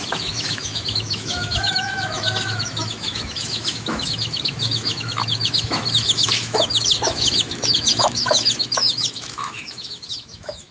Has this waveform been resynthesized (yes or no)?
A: yes